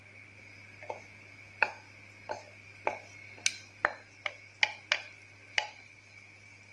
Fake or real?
real